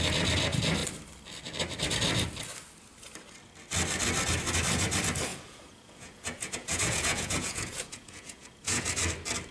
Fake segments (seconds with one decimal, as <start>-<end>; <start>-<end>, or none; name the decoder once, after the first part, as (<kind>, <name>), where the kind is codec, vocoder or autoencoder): 5.3-8.8 (vocoder, Vocos)

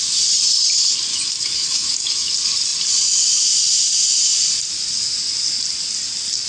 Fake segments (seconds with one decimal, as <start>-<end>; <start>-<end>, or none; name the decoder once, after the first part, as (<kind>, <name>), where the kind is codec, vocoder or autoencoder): 1.1-2.3 (autoencoder, DAC-VAE)